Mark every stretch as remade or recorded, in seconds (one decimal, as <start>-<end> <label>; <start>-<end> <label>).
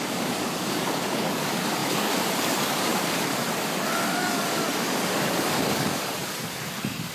0.0-7.1 remade